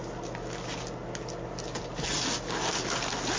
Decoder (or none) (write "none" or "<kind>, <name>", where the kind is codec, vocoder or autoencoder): none